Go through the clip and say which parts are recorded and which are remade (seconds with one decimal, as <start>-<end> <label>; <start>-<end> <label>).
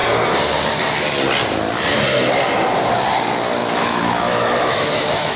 0.0-3.6 recorded; 3.6-5.4 remade